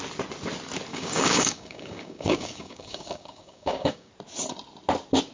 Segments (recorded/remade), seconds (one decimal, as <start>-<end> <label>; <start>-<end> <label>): 0.0-0.9 recorded; 0.9-4.1 remade; 4.1-5.3 recorded